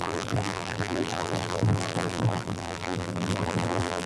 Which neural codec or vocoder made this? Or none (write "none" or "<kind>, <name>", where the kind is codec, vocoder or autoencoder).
vocoder, BigVGAN v2